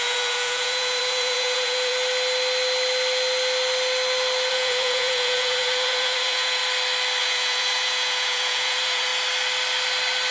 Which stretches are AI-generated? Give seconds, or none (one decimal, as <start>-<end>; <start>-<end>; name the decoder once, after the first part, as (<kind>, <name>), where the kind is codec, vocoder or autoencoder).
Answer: 0.0-1.9 (vocoder, Vocos); 4.5-6.6; 7.2-9.1